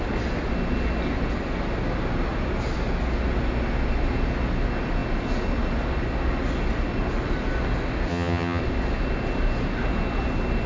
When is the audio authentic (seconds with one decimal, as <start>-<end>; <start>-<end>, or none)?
0.0-8.1; 8.6-10.7